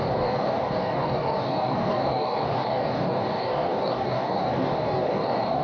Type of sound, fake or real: fake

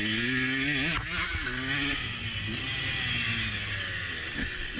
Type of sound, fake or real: real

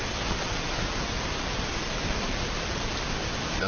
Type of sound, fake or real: real